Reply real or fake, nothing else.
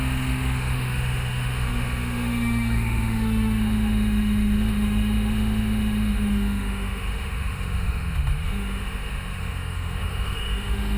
fake